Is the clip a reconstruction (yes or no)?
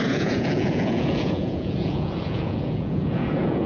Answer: yes